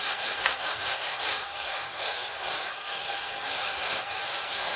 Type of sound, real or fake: fake